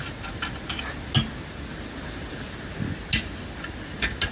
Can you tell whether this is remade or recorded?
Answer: recorded